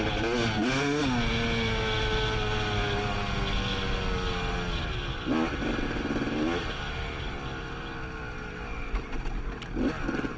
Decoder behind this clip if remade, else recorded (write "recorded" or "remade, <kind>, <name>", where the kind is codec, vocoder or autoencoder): recorded